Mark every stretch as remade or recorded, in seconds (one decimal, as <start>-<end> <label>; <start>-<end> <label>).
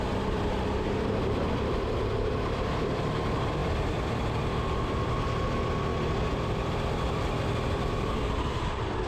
0.0-5.9 remade; 5.9-6.7 recorded; 6.7-9.1 remade